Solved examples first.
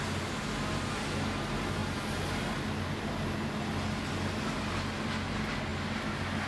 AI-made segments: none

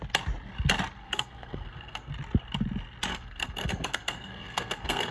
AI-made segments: 1.0-2.1 (codec, SNAC); 3.1-5.1

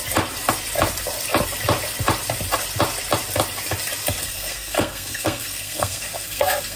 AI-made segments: 4.2-6.8 (codec, SNAC)

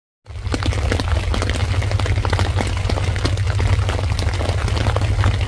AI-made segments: none

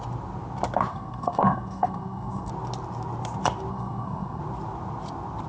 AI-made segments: 0.9-2.5 (codec, SNAC); 3.7-4.4